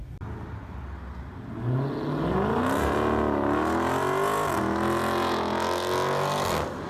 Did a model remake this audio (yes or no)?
no